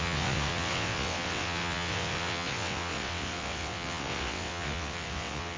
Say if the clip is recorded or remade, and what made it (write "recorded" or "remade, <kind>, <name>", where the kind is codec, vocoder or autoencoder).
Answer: remade, vocoder, WaveNeXt